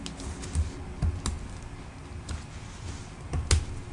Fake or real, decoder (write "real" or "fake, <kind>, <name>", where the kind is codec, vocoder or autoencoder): real